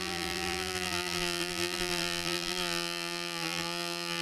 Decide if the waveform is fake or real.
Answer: fake